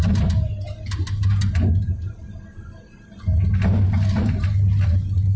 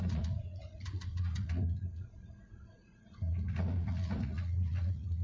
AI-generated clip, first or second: second